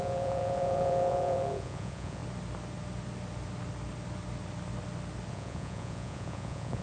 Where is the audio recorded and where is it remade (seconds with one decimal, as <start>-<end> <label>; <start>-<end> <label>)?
0.0-2.2 remade; 2.2-5.3 recorded; 5.3-6.8 remade